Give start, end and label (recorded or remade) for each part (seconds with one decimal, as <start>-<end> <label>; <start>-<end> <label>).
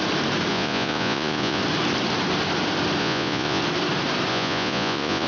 0.0-0.5 recorded; 0.5-1.6 remade; 1.6-3.0 recorded; 3.0-3.6 remade; 3.6-4.3 recorded; 4.3-5.3 remade